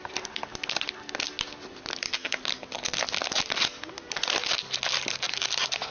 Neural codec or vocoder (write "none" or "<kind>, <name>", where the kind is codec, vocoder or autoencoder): none